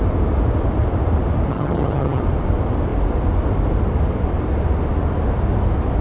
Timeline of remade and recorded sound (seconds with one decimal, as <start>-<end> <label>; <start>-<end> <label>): 0.0-1.5 recorded; 1.5-2.2 remade; 2.2-6.0 recorded